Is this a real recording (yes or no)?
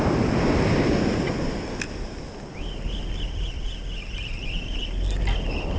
yes